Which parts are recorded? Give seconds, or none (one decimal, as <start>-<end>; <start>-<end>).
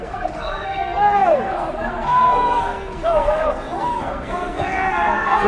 none